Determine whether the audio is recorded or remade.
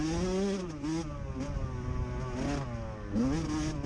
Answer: recorded